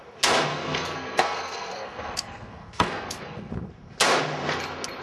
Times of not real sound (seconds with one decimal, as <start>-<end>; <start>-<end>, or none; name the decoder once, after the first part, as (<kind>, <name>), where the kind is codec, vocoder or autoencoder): 0.5-3.5 (codec, SNAC)